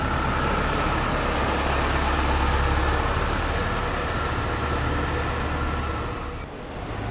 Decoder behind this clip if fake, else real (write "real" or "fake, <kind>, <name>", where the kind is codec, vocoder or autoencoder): real